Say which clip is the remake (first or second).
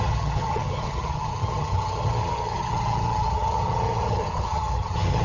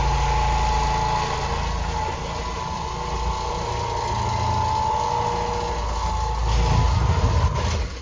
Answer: first